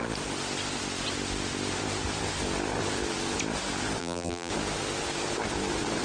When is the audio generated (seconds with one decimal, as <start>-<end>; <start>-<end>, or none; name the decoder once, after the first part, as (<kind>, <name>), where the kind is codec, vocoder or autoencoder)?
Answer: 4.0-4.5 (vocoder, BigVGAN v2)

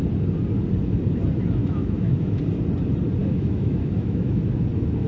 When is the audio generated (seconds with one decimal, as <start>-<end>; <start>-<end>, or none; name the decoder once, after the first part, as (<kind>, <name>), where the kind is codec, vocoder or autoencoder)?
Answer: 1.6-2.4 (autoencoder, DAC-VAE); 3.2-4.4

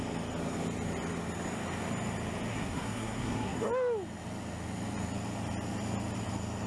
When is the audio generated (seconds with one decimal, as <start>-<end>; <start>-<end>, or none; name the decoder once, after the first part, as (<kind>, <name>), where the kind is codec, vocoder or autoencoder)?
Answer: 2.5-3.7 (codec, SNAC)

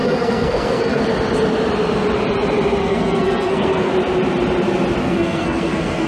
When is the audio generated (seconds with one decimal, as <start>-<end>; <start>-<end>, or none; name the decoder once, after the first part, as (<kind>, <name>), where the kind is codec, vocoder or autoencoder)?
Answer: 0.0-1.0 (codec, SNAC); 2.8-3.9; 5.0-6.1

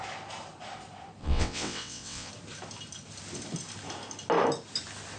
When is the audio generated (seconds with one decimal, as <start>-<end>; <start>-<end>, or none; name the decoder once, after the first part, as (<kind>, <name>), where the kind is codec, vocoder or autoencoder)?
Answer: 1.2-2.3 (vocoder, WaveNeXt)